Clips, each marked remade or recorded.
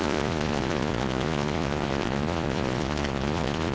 remade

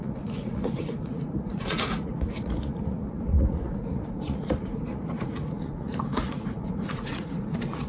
remade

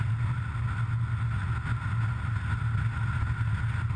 recorded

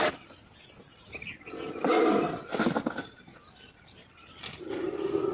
recorded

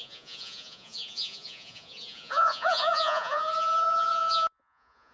remade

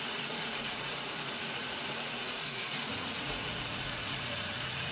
remade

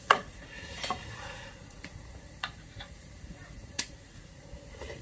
remade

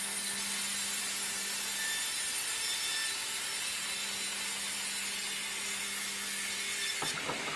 recorded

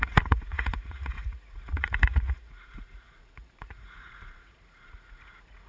remade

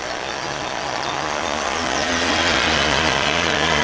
remade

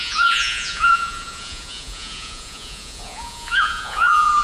remade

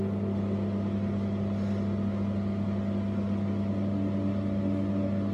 recorded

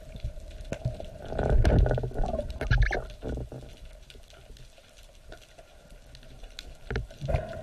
recorded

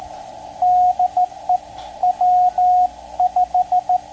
recorded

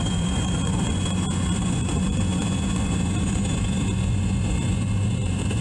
remade